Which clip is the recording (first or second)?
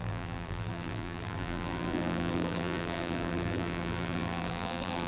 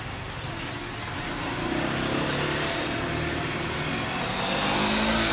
second